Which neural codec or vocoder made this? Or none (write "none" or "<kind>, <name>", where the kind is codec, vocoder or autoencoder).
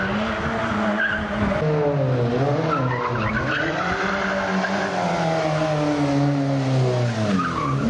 none